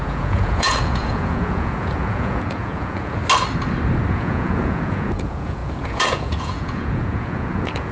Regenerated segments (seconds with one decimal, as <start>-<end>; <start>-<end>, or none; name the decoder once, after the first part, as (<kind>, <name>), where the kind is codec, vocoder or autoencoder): 0.0-3.2 (vocoder, Vocos); 4.1-7.9